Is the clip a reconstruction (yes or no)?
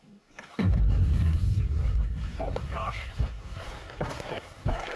yes